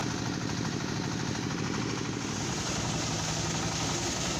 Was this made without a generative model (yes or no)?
yes